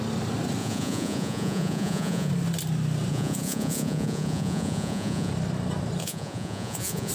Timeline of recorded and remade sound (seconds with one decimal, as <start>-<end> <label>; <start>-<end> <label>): 0.0-0.6 recorded; 0.6-2.3 remade; 2.3-3.1 recorded; 3.1-5.3 remade; 5.3-6.0 recorded; 6.0-7.1 remade